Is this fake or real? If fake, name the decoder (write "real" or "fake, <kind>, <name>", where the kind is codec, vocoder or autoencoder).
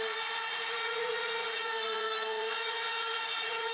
fake, vocoder, Vocos